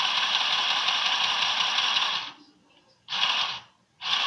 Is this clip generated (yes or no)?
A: no